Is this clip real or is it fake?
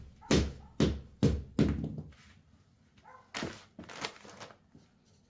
real